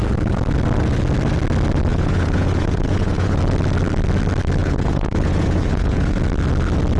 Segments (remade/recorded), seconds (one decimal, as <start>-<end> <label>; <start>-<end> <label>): 0.0-1.9 recorded; 1.9-3.4 remade; 3.4-4.6 recorded; 4.6-6.2 remade; 6.2-7.0 recorded